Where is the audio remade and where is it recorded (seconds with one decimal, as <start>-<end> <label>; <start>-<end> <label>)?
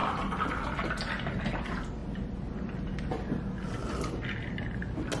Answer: 0.0-5.2 recorded